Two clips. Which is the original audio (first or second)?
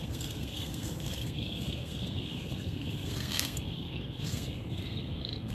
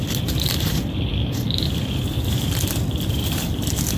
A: second